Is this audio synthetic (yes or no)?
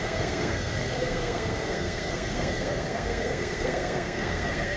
yes